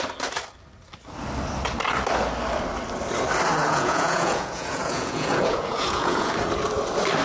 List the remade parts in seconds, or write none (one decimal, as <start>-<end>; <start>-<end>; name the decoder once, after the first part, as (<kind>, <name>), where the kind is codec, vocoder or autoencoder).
3.6-6.3 (vocoder, Vocos)